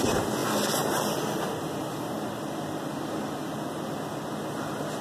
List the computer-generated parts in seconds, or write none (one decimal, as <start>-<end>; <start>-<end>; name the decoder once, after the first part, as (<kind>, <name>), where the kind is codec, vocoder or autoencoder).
0.4-2.8 (vocoder, BigVGAN v2)